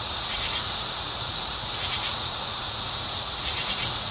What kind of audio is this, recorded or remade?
remade